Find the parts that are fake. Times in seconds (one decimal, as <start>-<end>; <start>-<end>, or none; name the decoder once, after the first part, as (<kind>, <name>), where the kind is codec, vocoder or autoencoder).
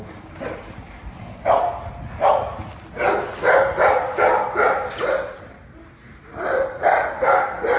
0.0-2.5 (vocoder, BigVGAN v2); 3.7-7.8